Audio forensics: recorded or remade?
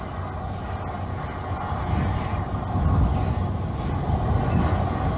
recorded